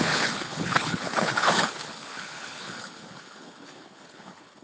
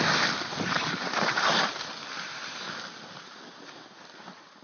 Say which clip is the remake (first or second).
first